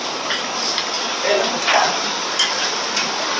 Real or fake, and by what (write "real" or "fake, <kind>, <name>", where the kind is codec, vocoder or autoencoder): real